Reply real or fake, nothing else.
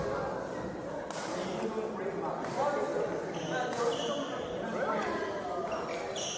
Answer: real